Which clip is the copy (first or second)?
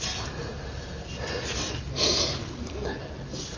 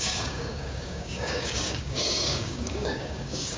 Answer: second